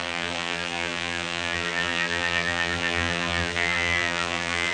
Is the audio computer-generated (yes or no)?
yes